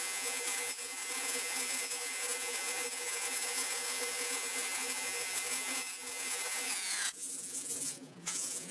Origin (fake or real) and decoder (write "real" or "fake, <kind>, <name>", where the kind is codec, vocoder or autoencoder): fake, vocoder, Vocos